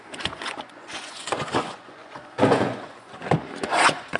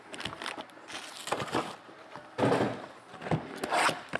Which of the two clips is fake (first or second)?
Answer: first